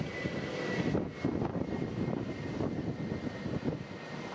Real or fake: real